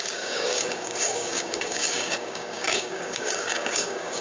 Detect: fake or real fake